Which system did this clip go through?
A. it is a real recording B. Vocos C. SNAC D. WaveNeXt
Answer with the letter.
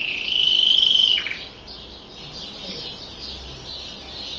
A